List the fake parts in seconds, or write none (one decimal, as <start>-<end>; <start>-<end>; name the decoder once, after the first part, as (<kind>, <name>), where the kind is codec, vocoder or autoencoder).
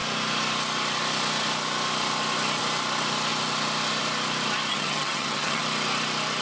4.7-5.6 (vocoder, HiFi-GAN)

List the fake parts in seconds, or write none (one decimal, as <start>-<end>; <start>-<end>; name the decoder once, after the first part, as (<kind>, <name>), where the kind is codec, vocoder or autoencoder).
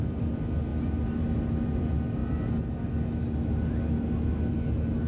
none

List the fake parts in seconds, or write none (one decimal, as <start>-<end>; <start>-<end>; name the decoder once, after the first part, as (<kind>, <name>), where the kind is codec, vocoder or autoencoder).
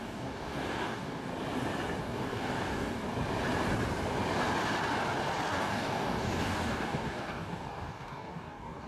0.0-1.3 (codec, DAC); 2.0-3.0; 5.5-8.9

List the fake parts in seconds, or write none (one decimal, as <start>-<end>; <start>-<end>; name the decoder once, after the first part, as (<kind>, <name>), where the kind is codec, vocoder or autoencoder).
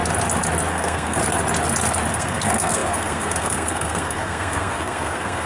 0.7-1.2 (codec, SNAC); 2.1-5.5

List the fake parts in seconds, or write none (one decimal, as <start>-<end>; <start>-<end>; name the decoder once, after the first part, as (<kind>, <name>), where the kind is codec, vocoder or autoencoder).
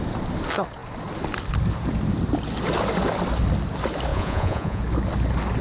4.1-4.8 (vocoder, Vocos)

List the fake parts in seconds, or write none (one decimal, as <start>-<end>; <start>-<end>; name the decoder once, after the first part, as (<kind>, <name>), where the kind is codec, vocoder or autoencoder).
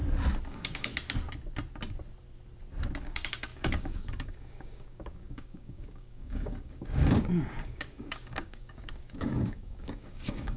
0.5-0.9 (codec, DAC); 3.0-10.6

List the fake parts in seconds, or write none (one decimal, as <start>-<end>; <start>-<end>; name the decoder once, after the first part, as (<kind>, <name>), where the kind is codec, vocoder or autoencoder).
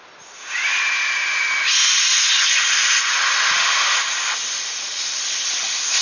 none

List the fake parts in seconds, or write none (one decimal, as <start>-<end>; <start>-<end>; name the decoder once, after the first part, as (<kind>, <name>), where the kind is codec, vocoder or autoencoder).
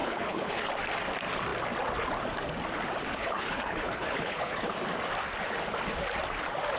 0.0-0.7 (codec, HILCodec); 3.1-4.7